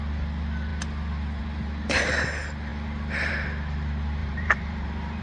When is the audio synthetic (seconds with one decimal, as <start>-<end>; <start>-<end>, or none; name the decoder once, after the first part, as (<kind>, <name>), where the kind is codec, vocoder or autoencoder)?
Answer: 4.2-5.2 (vocoder, BigVGAN v2)